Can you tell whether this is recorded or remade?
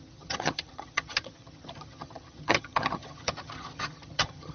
remade